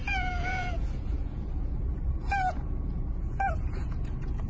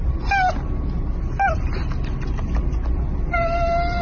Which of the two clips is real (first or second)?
second